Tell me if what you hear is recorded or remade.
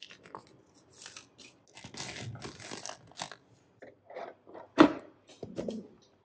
recorded